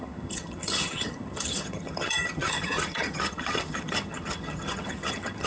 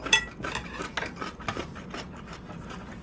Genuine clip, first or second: second